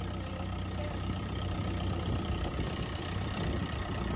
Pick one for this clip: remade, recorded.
remade